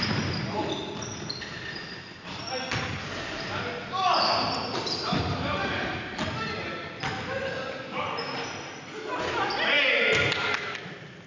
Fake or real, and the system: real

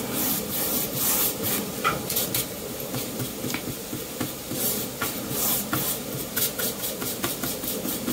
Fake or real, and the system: real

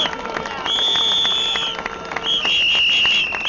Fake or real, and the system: real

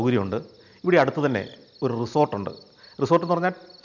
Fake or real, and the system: real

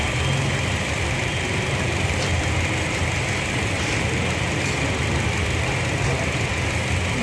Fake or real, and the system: fake, vocoder, BigVGAN v2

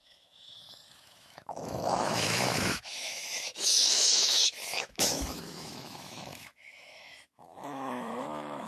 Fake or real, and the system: fake, autoencoder, DAC-VAE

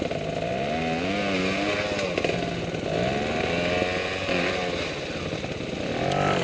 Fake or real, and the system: real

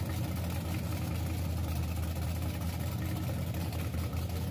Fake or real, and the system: real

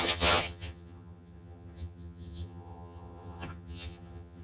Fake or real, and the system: fake, vocoder, HiFi-GAN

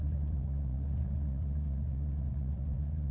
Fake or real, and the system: fake, vocoder, Vocos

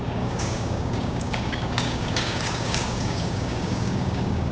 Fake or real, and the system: fake, codec, DAC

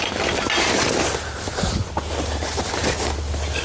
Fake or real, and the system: real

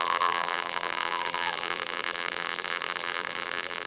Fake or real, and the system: fake, vocoder, BigVGAN v2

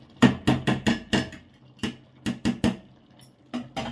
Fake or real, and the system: real